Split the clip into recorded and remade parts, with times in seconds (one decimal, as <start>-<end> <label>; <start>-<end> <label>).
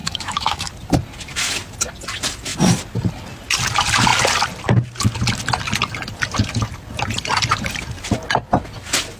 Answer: 0.0-0.7 remade; 0.7-9.2 recorded